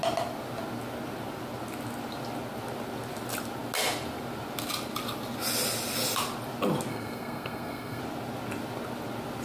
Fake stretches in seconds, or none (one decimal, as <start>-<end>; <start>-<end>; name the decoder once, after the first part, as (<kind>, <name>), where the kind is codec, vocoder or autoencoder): 6.9-8.0 (codec, SNAC)